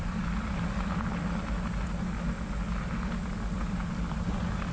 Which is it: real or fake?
real